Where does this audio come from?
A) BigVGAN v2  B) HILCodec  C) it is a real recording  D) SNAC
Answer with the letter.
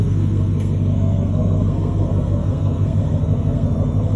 D